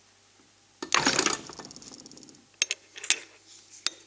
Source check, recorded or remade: recorded